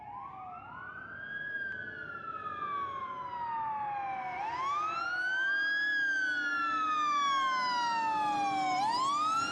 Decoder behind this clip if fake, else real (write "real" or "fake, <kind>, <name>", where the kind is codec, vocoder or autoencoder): real